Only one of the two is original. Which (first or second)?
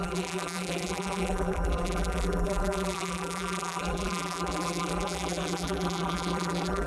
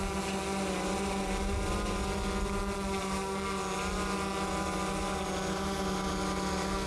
second